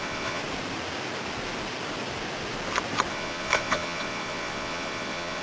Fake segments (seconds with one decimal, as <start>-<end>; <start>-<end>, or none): 0.0-0.4; 3.1-5.4